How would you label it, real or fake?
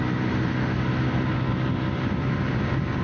real